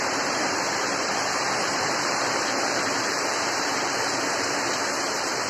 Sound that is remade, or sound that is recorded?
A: remade